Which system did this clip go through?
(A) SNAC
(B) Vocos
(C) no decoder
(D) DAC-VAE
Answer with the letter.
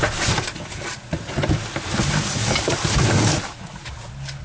C